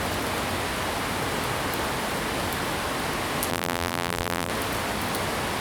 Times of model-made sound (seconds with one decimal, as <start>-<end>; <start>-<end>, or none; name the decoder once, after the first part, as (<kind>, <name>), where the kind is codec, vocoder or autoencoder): 3.5-4.5 (vocoder, BigVGAN v2)